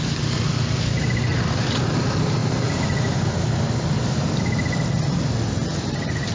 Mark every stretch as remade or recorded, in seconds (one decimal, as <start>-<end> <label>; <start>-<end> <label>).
0.0-6.3 recorded